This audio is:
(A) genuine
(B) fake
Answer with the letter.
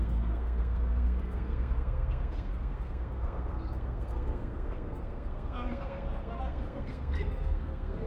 B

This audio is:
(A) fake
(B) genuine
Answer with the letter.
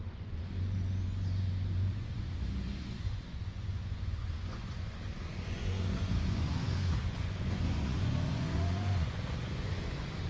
A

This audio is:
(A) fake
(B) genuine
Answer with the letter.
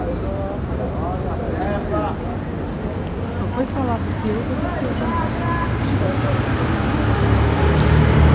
B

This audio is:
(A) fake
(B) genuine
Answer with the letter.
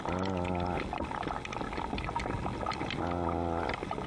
B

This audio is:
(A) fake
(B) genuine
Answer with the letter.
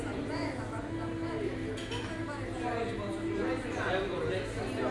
B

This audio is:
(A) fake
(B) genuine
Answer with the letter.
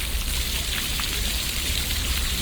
B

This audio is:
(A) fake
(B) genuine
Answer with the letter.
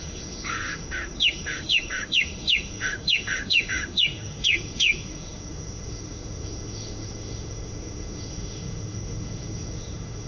A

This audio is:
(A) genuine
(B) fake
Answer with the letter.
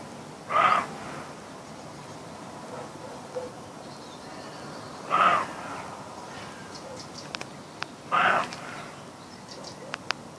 A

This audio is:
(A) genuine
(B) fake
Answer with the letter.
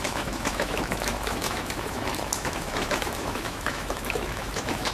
B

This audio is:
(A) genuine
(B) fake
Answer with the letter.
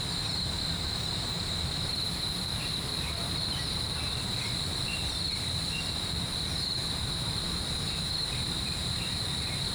B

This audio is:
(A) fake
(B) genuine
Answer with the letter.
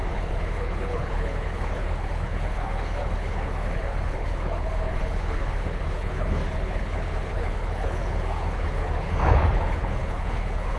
A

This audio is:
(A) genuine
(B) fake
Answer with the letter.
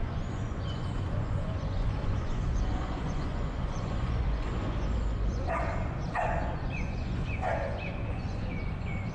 B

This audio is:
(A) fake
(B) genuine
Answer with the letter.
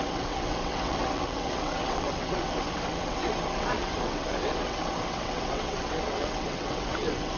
A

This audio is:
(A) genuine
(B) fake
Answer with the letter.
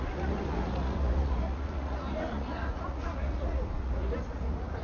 B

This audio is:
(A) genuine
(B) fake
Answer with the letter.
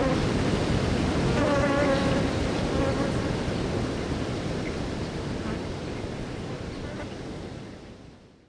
A